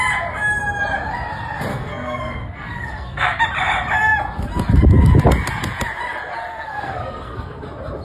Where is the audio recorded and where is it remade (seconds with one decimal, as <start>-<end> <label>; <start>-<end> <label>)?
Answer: 0.0-1.7 recorded; 1.7-3.4 remade; 3.4-6.5 recorded; 6.5-7.6 remade; 7.6-8.0 recorded